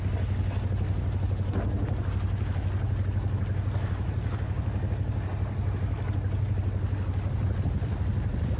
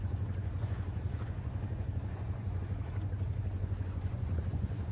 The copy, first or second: second